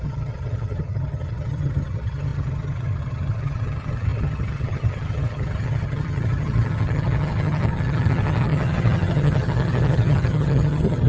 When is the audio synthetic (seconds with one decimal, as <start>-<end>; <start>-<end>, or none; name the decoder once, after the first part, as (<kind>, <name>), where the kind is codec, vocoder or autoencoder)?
0.0-11.1 (vocoder, HiFi-GAN)